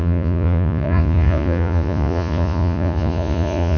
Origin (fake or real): fake